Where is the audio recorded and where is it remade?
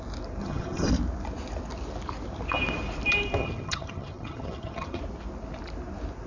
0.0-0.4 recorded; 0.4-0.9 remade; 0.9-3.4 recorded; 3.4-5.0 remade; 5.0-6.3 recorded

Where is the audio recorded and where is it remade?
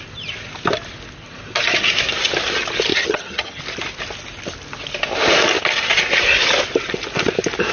0.0-2.9 recorded; 2.9-3.6 remade; 3.6-7.7 recorded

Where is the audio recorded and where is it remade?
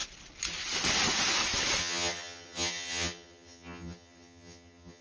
0.0-1.8 recorded; 1.8-5.0 remade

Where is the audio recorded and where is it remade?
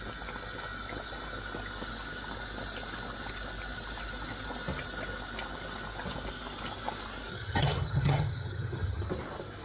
0.0-7.3 recorded; 7.3-9.1 remade; 9.1-9.6 recorded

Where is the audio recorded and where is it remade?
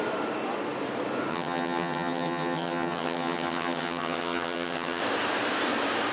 0.0-1.3 recorded; 1.3-5.0 remade; 5.0-6.1 recorded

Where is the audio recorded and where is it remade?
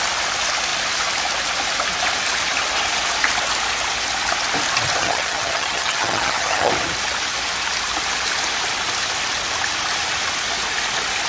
0.0-5.0 recorded; 5.0-6.7 remade; 6.7-11.3 recorded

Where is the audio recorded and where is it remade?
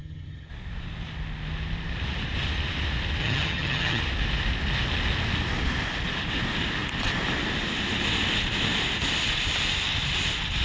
0.0-0.5 remade; 0.5-3.2 recorded; 3.2-4.0 remade; 4.0-10.6 recorded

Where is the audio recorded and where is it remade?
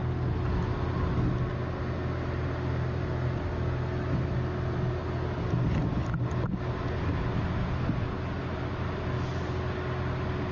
0.0-10.5 recorded